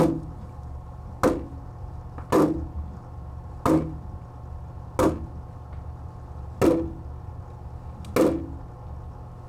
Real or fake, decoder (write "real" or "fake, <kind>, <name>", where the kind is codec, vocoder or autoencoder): real